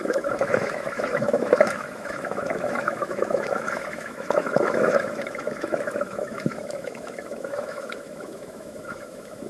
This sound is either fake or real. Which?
fake